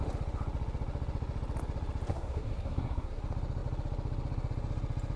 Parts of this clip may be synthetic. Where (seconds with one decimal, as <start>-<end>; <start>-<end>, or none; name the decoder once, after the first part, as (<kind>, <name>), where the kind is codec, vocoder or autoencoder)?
2.1-3.2 (codec, SNAC)